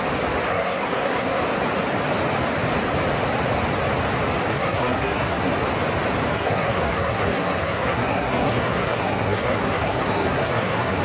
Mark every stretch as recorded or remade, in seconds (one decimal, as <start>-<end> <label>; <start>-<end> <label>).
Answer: 0.0-0.5 recorded; 0.5-1.4 remade; 1.4-4.5 recorded; 4.5-5.5 remade; 5.5-6.3 recorded; 6.3-11.0 remade